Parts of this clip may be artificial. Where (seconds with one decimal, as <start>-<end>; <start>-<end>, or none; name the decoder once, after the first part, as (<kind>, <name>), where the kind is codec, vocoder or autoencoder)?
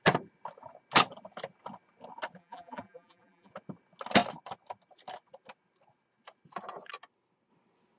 2.4-3.5 (vocoder, BigVGAN v2)